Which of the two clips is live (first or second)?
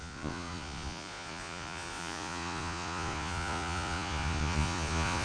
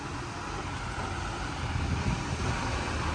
second